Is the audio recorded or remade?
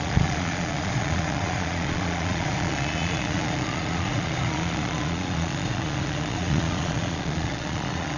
remade